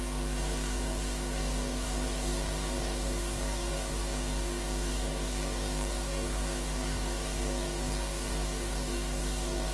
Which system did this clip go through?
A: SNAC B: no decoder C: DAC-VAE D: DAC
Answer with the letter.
D